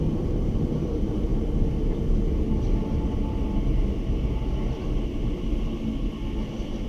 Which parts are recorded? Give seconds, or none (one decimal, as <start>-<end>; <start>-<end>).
0.0-1.3; 2.2-6.9